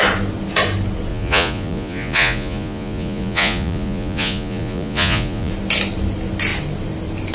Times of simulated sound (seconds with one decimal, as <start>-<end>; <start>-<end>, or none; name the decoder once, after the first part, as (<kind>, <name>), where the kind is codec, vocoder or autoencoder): 1.1-5.5 (vocoder, Vocos)